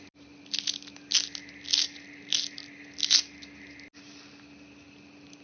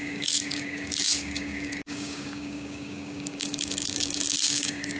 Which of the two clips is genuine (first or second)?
first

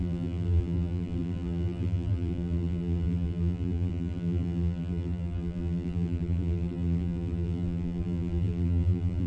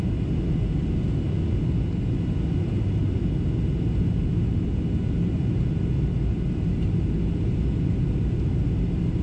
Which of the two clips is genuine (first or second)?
second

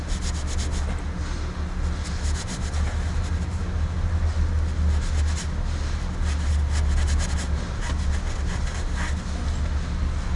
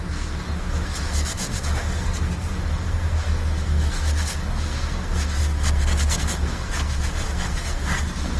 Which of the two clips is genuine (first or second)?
first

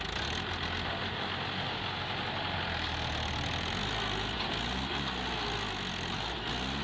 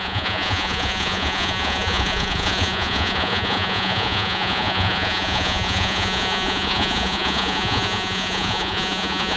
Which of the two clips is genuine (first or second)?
first